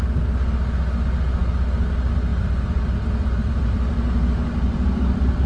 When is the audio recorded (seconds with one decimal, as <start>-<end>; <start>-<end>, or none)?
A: 0.0-2.3; 5.0-5.5